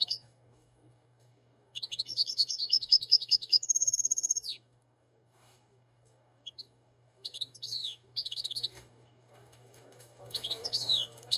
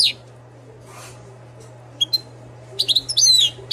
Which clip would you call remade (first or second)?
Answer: first